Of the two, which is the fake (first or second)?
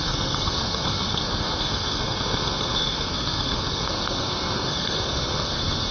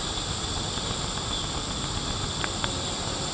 first